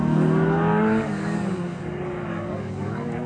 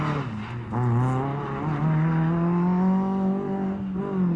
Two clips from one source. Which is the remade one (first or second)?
first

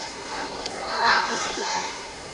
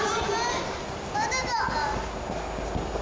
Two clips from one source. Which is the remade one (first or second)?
first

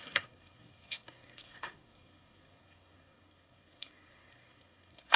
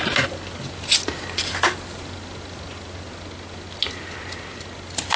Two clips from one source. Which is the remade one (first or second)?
first